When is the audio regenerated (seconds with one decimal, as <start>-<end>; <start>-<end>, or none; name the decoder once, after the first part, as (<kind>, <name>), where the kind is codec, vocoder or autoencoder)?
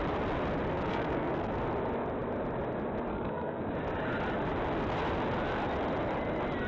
0.9-1.5 (codec, SNAC); 3.1-3.6